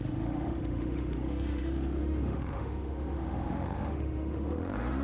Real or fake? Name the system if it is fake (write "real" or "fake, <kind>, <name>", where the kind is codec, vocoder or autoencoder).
fake, autoencoder, DAC-VAE